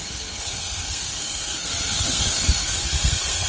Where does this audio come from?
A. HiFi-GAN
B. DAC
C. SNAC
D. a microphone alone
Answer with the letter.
C